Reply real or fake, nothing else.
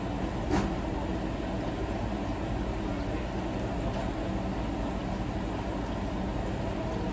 real